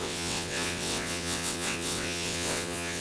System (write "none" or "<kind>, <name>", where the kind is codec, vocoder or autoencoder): vocoder, WaveNeXt